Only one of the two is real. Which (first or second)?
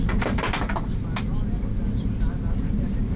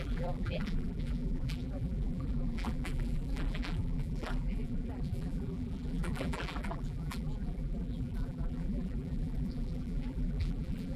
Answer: first